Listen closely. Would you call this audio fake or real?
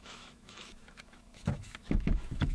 fake